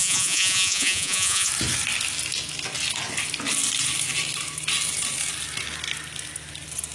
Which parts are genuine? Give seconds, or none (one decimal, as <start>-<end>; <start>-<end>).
1.5-6.9